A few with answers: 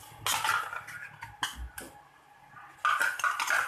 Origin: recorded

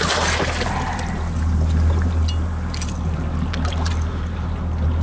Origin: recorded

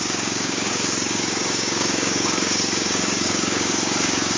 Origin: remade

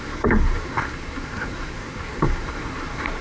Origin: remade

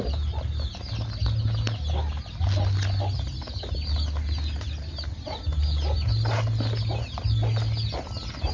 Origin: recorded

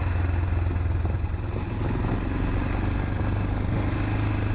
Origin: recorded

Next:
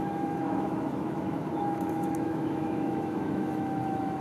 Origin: remade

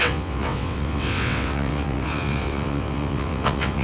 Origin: remade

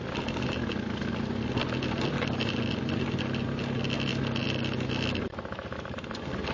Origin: recorded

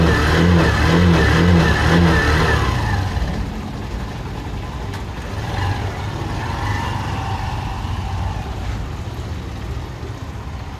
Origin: recorded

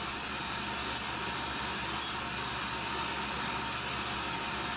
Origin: recorded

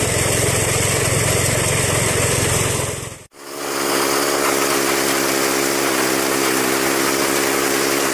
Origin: recorded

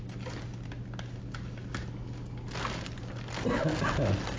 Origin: recorded